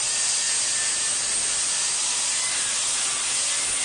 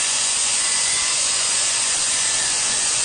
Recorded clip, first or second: first